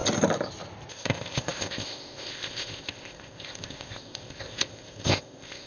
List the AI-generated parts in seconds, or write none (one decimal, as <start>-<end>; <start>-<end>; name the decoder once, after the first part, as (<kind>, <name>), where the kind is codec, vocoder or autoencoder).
0.9-5.7 (codec, ZipCodec)